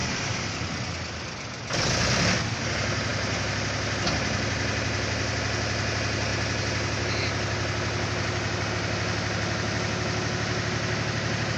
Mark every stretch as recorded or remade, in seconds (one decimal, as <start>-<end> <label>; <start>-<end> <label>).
0.0-0.6 remade; 0.6-11.6 recorded